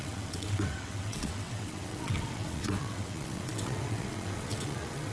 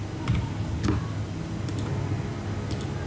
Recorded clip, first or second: second